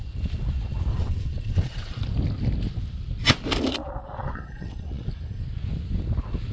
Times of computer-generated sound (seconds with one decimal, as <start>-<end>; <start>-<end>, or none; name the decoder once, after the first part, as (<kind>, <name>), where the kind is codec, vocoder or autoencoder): 0.9-2.0 (vocoder, WaveNeXt); 4.2-5.1